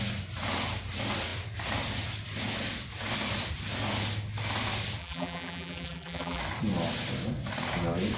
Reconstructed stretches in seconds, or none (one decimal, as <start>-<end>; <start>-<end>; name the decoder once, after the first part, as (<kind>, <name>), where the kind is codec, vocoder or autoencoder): 5.0-6.4 (vocoder, BigVGAN v2)